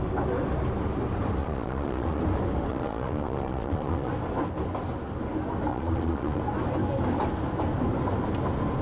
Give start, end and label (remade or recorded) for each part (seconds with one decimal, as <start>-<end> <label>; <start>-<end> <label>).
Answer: 0.0-1.4 recorded; 1.4-2.2 remade; 2.2-2.7 recorded; 2.7-4.1 remade; 4.1-5.7 recorded; 5.7-6.4 remade; 6.4-8.8 recorded